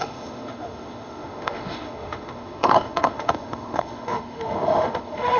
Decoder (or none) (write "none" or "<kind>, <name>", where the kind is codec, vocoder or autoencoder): autoencoder, DAC-VAE